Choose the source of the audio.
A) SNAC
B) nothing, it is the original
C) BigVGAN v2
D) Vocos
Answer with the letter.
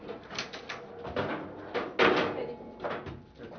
B